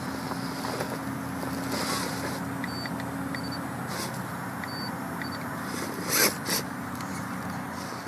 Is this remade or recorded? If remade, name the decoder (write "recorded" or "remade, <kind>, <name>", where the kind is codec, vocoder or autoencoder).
recorded